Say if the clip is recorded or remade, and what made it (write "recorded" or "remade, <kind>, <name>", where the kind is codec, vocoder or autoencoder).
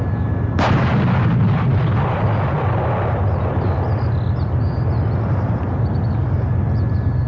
recorded